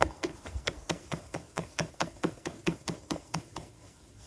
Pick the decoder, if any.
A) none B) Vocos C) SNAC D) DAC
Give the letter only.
C